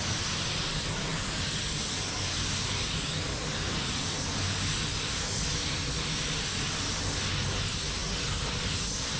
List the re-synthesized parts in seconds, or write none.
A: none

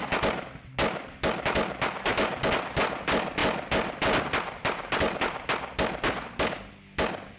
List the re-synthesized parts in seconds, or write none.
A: none

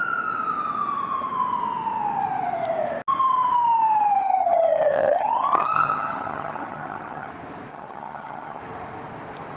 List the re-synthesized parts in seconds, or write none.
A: 4.2-7.3 (vocoder, HiFi-GAN); 7.7-8.6

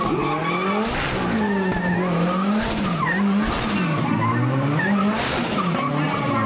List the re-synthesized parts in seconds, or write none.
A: none

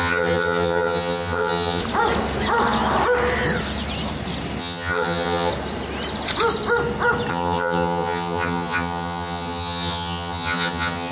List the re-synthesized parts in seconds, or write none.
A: 0.0-1.8 (vocoder, HiFi-GAN); 4.6-5.5; 7.3-11.1